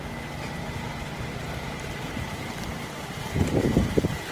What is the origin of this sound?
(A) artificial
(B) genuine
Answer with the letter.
A